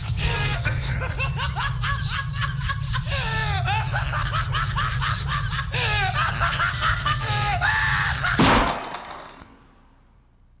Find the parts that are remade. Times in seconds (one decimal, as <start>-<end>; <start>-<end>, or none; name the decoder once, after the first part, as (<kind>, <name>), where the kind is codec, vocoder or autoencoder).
0.0-0.9 (codec, SNAC); 6.7-7.7